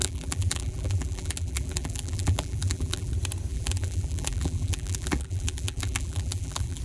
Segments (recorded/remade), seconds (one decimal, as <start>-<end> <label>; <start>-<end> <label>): 0.0-3.1 remade; 3.1-3.5 recorded; 3.5-6.8 remade